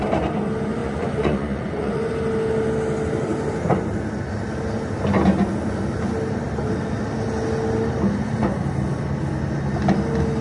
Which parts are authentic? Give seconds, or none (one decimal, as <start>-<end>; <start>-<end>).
0.0-0.8; 2.1-10.4